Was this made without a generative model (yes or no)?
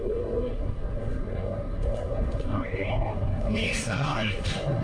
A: no